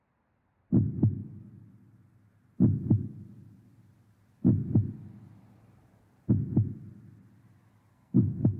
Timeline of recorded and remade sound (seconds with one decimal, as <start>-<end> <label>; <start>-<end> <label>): 0.0-7.9 recorded; 7.9-8.6 remade